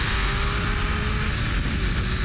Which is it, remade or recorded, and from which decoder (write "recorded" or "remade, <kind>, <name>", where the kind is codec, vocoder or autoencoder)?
recorded